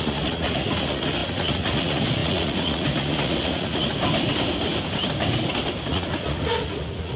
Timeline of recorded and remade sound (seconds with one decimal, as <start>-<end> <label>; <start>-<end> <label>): 0.0-3.9 remade; 3.9-5.9 recorded; 5.9-7.2 remade